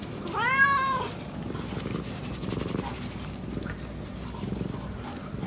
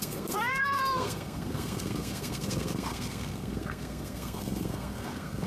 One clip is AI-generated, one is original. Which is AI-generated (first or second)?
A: second